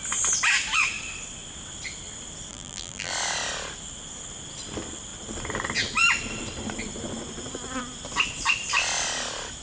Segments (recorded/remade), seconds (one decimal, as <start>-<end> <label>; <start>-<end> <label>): 0.0-2.5 recorded; 2.5-3.1 remade; 3.1-9.6 recorded